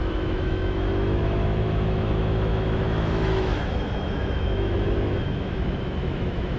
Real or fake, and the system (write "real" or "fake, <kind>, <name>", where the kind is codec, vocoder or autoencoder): fake, autoencoder, DAC-VAE